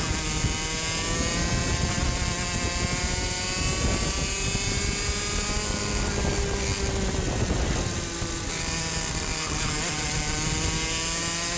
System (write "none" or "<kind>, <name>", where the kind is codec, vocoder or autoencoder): none